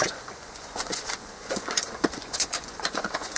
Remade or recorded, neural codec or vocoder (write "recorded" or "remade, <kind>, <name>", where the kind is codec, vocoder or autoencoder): remade, vocoder, Vocos